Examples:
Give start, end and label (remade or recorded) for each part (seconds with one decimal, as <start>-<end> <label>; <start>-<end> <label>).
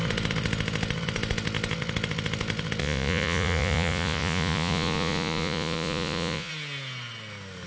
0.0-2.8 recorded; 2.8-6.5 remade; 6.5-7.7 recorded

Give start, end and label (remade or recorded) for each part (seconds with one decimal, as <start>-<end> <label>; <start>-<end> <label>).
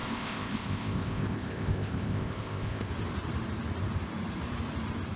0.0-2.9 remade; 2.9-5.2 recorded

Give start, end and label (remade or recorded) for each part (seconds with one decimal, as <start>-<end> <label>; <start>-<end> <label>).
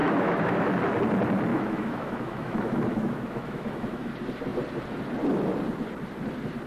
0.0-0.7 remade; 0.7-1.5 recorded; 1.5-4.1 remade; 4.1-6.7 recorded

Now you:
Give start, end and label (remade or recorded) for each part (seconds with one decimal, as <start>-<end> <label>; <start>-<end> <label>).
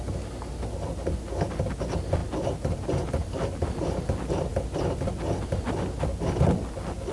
0.0-7.1 recorded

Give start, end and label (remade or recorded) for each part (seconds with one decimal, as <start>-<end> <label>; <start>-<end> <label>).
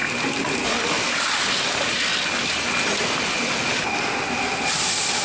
0.0-5.2 recorded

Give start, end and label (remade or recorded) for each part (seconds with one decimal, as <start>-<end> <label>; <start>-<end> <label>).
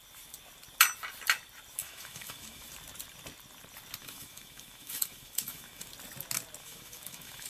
0.0-1.8 recorded; 1.8-2.7 remade; 2.7-4.0 recorded; 4.0-5.9 remade; 5.9-6.6 recorded; 6.6-7.5 remade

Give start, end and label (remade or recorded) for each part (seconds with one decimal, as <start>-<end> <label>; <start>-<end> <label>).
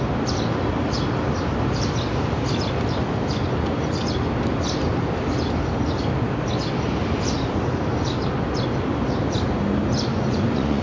0.0-10.1 recorded; 10.1-10.8 remade